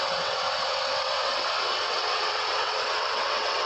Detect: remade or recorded remade